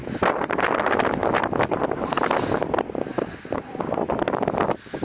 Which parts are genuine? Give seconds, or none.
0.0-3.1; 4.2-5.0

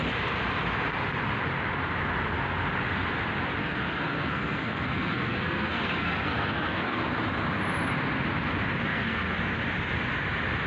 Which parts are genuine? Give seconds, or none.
0.0-3.6; 7.0-8.9; 9.4-10.7

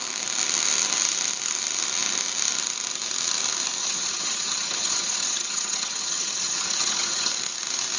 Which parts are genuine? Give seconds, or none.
0.0-3.8; 7.3-8.0

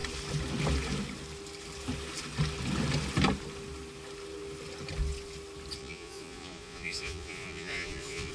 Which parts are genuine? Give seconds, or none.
0.0-5.8

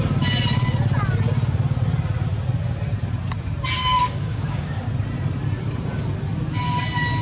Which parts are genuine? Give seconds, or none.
0.0-3.8; 4.9-7.2

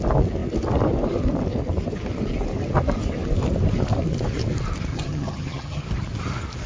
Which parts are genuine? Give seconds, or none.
0.0-4.9; 5.8-6.7

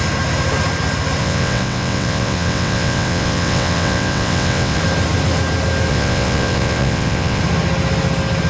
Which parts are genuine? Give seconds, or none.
0.0-1.2; 4.8-5.9; 7.4-8.5